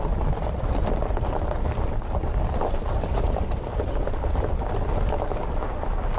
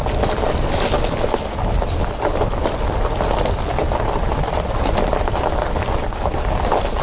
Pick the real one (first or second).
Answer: second